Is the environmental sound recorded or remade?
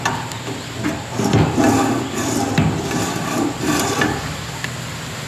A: recorded